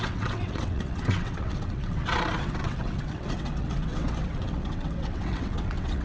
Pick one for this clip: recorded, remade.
remade